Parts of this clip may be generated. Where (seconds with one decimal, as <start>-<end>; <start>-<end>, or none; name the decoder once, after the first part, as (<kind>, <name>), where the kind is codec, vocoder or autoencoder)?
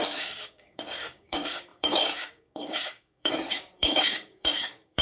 0.0-5.0 (codec, DAC)